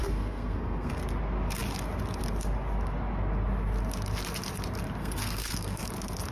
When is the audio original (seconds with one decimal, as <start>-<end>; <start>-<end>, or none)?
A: 0.9-5.0; 5.8-6.3